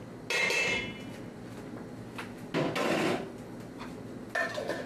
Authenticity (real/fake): real